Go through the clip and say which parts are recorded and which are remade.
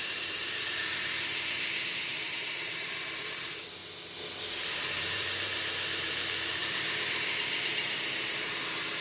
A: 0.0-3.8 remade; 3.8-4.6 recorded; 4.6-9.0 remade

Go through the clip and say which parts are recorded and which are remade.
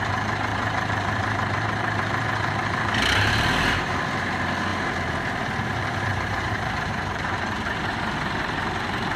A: 0.0-0.5 recorded; 0.5-4.0 remade; 4.0-6.1 recorded; 6.1-7.8 remade; 7.8-9.2 recorded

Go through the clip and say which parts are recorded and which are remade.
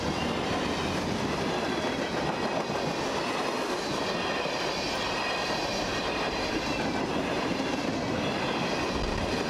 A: 0.0-5.7 recorded; 5.7-7.7 remade; 7.7-9.5 recorded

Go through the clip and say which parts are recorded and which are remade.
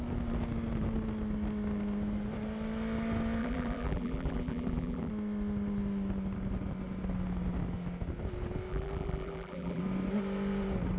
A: 0.0-3.4 recorded; 3.4-5.1 remade; 5.1-8.7 recorded; 8.7-9.8 remade; 9.8-11.0 recorded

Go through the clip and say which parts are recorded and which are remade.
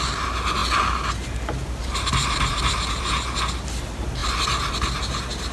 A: 0.0-5.5 recorded